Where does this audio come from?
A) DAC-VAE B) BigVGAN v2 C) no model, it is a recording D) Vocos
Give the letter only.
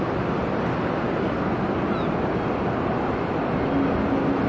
C